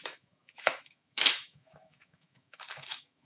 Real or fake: fake